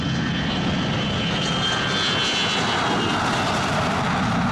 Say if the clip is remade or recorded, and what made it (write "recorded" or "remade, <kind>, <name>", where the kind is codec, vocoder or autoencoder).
recorded